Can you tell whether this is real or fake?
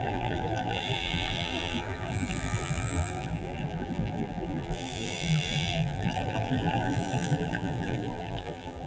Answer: fake